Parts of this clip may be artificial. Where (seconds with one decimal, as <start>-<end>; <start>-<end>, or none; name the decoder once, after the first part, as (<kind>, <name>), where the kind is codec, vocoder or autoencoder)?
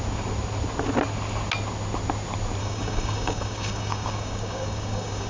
2.6-5.3 (codec, DAC)